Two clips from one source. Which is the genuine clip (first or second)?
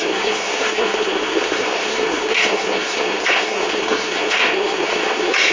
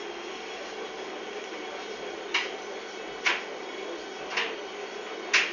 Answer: second